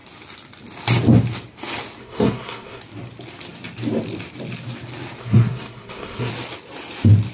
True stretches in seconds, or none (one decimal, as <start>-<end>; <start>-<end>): 0.0-2.0; 2.8-5.2; 6.3-7.3